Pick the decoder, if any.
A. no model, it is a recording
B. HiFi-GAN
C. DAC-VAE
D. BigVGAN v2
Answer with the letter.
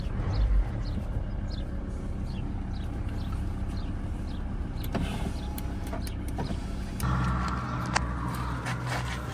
A